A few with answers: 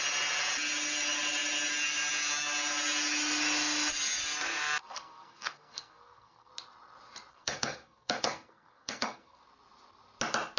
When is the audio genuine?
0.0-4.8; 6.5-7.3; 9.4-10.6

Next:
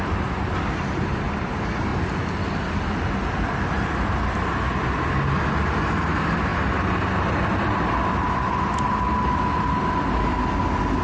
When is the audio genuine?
0.0-11.0

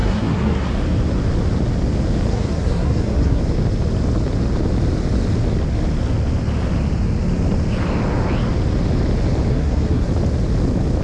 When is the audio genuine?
0.7-2.3; 3.4-9.5; 10.1-11.0

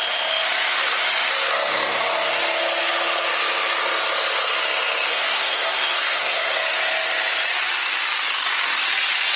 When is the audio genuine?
0.0-5.1; 6.6-9.4